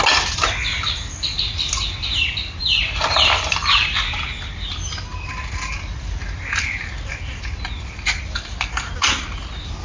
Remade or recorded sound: recorded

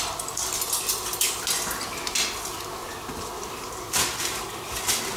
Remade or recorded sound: recorded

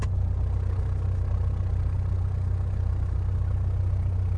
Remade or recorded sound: recorded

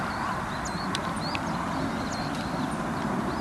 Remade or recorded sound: recorded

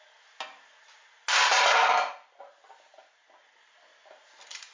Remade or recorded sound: recorded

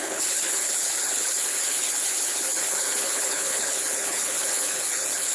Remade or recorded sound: remade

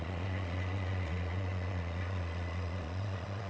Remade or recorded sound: remade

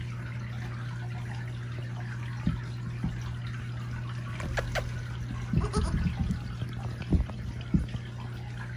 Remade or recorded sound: recorded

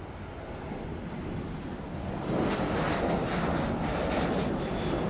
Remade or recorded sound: recorded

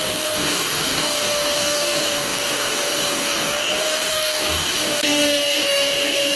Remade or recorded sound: remade